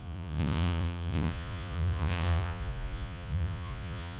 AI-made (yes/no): yes